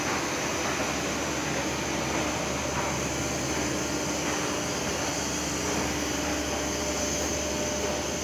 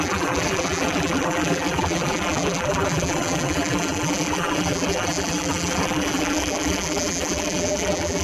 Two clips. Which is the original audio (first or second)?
first